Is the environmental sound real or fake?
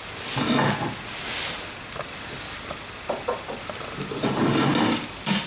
real